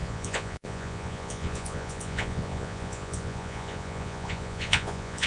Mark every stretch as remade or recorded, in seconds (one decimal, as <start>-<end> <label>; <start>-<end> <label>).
0.0-5.3 remade